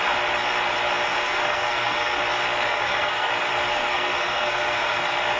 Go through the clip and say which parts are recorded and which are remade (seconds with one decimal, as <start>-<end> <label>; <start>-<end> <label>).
0.0-1.1 recorded; 1.1-2.2 remade; 2.2-2.7 recorded; 2.7-3.3 remade; 3.3-3.7 recorded; 3.7-5.0 remade; 5.0-5.4 recorded